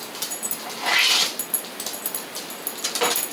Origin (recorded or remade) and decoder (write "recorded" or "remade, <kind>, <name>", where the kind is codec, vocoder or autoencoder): recorded